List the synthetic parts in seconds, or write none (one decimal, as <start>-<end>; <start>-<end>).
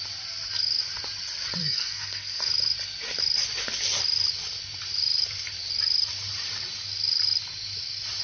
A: 1.6-2.4